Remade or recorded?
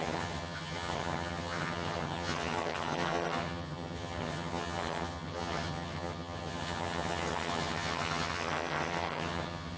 remade